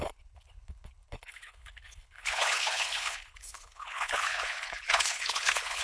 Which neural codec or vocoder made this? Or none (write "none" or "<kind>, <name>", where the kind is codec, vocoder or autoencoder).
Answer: codec, HILCodec